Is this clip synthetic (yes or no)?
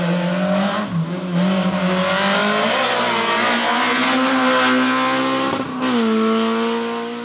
no